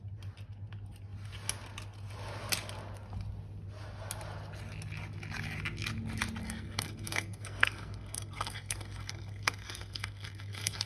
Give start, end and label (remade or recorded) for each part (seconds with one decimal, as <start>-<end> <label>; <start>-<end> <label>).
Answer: 0.0-6.4 recorded; 6.4-10.9 remade